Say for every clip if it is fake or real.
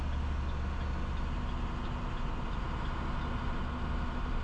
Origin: real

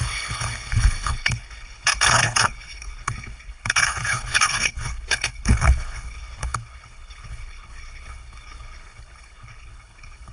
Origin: fake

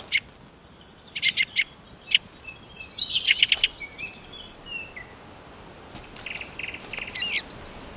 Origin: real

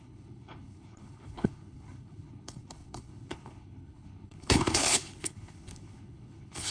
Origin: fake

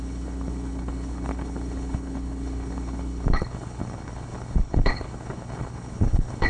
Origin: fake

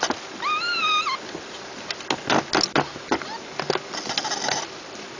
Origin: real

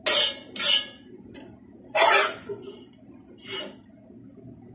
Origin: real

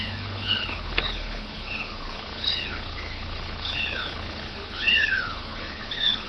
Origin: fake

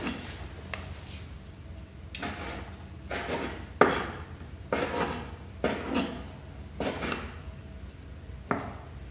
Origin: real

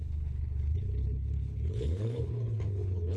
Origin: fake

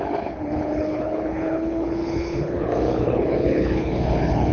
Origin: fake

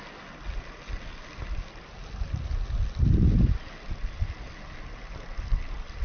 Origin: real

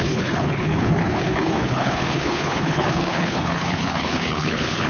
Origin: fake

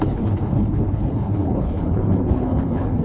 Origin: fake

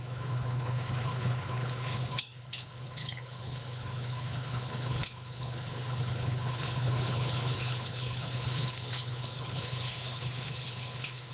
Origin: fake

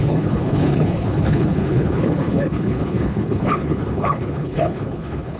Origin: fake